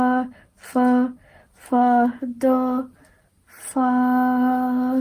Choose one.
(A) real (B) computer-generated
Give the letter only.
A